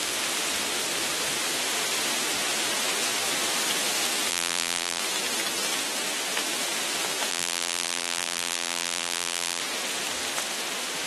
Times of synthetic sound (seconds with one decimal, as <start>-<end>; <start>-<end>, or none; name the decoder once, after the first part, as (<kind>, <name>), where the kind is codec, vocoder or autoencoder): 4.3-5.0 (vocoder, BigVGAN v2); 7.3-9.6